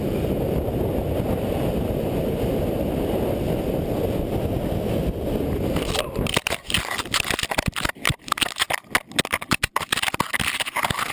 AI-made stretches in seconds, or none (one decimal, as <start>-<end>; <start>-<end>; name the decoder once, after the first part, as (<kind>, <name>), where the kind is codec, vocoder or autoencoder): none